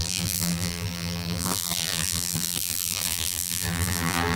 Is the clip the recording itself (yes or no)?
no